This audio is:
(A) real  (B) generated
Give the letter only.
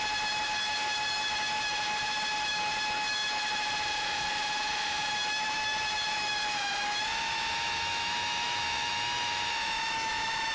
B